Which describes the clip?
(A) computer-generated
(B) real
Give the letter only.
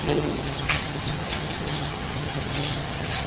A